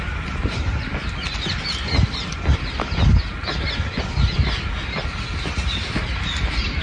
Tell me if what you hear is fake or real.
real